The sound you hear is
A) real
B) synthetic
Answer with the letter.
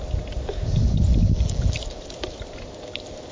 A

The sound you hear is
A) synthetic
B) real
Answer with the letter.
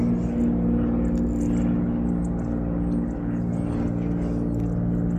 B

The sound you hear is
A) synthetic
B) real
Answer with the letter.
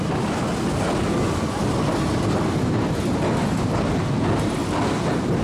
B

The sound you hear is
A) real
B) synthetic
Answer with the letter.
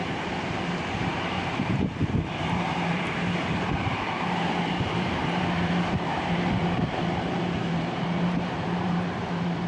B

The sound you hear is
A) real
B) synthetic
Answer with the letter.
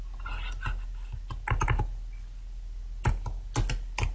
A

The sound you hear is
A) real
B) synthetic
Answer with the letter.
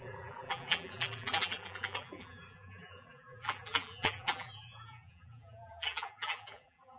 B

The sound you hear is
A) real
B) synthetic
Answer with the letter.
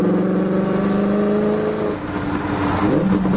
A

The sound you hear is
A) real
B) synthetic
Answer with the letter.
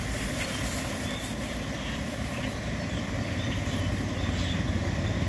B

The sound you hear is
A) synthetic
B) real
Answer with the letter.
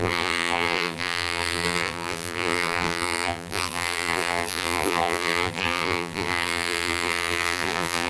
A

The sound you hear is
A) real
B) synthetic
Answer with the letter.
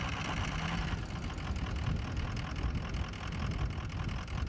A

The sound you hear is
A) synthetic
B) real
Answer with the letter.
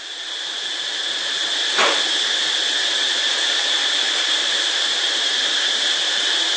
A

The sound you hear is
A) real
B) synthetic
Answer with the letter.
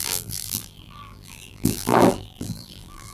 B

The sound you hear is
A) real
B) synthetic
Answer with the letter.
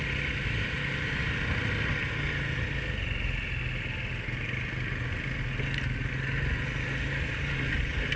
A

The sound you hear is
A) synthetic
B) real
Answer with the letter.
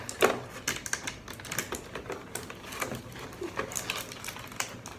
B